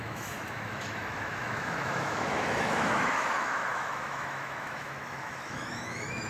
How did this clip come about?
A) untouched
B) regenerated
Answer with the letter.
B